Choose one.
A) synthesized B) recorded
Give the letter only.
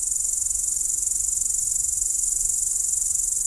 B